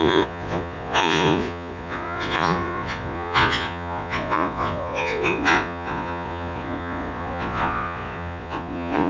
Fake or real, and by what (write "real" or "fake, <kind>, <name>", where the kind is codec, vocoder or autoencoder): fake, vocoder, Vocos